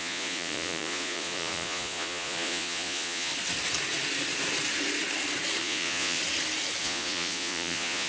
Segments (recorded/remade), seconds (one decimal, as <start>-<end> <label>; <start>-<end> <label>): 0.0-3.3 remade; 3.3-5.6 recorded; 5.6-6.2 remade; 6.2-6.8 recorded; 6.8-8.1 remade